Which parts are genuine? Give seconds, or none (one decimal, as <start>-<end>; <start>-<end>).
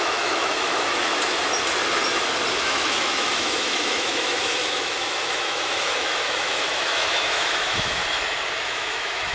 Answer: 1.1-2.6; 8.0-8.6